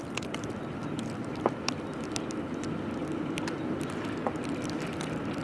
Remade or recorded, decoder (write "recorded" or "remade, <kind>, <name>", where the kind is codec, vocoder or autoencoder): recorded